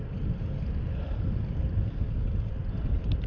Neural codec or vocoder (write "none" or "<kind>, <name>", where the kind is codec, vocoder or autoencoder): none